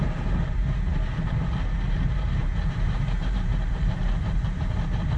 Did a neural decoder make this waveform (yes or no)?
yes